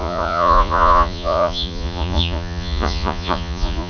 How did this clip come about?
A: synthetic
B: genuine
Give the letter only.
A